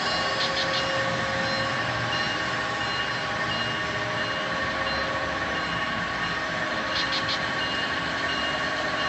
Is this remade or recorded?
recorded